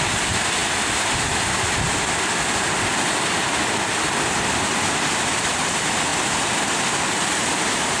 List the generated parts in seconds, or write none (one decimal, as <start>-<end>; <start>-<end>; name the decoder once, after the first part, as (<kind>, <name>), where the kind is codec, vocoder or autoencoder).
none